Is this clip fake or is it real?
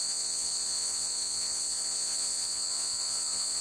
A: fake